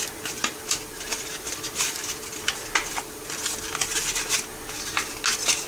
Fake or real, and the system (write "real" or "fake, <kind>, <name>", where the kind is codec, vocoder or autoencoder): real